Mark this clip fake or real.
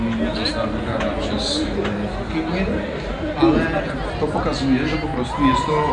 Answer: real